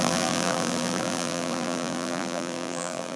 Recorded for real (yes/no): no